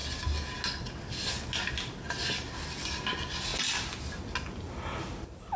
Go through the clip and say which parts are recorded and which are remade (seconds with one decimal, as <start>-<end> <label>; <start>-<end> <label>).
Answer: 0.0-5.6 recorded